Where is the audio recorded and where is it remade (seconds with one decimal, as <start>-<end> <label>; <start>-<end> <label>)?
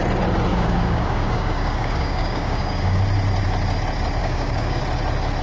0.0-0.5 recorded; 0.5-3.0 remade; 3.0-4.2 recorded; 4.2-4.8 remade; 4.8-5.4 recorded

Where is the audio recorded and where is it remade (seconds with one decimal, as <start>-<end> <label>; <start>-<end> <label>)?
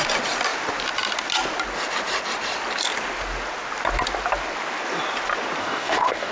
0.0-5.6 recorded; 5.6-6.3 remade